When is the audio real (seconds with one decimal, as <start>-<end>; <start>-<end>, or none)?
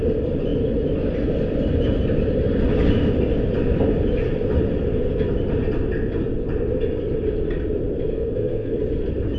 0.0-8.1; 8.8-9.4